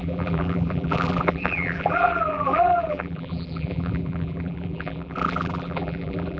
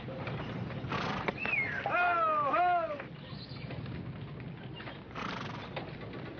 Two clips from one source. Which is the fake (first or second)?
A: first